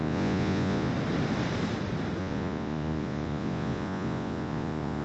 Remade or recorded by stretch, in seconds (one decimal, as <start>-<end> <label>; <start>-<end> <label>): 0.0-0.9 remade; 0.9-2.2 recorded; 2.2-5.0 remade